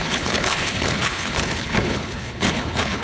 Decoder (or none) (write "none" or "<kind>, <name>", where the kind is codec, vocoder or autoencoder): codec, HILCodec